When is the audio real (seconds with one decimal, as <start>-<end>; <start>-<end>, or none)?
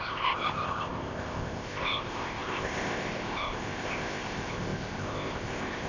none